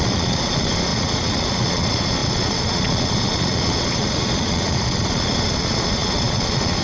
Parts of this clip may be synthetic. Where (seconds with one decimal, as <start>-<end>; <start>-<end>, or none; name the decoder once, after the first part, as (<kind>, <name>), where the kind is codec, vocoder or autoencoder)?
0.0-6.8 (vocoder, Vocos)